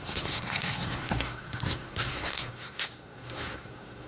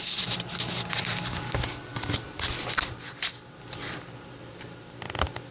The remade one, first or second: first